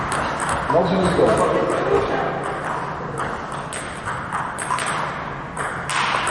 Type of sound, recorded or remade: recorded